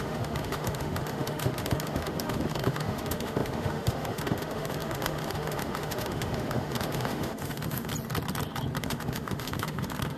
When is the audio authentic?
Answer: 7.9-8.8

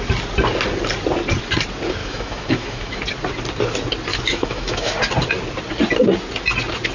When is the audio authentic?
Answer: 0.0-2.0; 3.0-4.1; 4.9-6.9

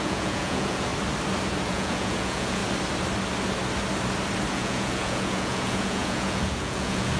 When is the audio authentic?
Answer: 0.9-1.7; 2.6-4.5

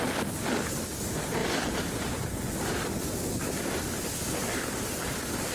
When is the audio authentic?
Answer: 0.0-5.5

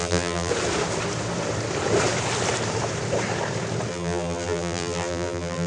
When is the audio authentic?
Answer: 0.5-3.9

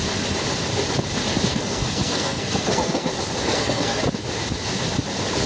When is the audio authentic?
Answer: 0.0-1.5; 3.1-3.5; 4.0-5.5

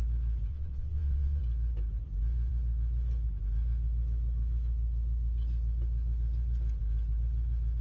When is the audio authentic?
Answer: 0.0-0.5; 1.4-7.8